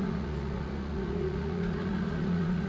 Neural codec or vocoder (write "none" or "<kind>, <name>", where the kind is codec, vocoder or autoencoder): vocoder, Vocos